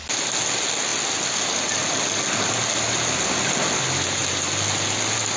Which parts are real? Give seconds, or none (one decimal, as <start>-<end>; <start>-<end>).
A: 0.0-5.4